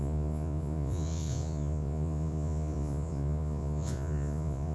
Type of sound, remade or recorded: remade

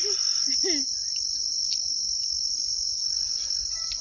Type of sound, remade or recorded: recorded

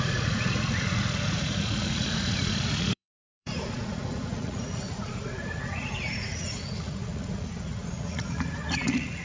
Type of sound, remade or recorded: remade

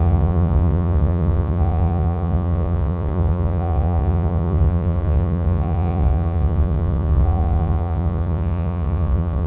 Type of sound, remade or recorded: remade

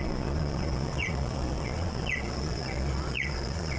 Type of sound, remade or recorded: remade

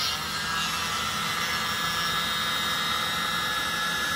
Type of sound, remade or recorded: recorded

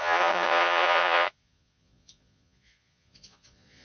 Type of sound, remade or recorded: remade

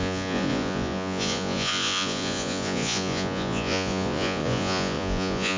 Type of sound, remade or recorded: remade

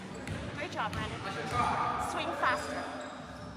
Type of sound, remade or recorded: recorded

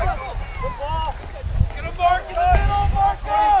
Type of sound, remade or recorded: recorded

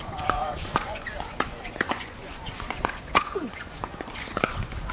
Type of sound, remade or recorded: remade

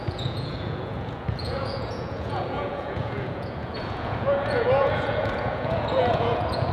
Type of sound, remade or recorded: remade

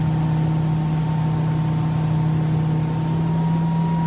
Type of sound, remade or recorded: recorded